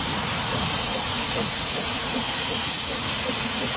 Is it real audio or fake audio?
fake